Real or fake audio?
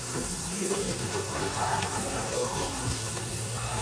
fake